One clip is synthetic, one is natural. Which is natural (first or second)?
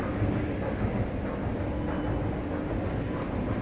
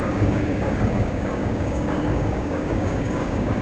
first